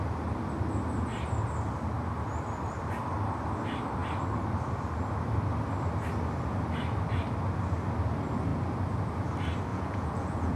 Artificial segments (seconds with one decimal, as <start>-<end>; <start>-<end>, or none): 9.7-10.6